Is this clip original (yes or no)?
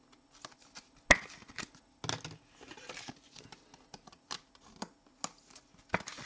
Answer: yes